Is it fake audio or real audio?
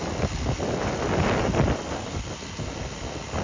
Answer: real